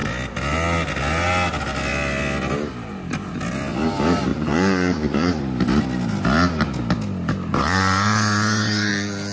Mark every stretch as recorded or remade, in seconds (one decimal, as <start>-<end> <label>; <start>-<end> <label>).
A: 0.0-4.3 recorded; 4.3-5.4 remade; 5.4-7.5 recorded; 7.5-8.9 remade; 8.9-9.3 recorded